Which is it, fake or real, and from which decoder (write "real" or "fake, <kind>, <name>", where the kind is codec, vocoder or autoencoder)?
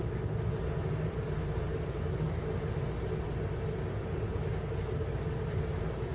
real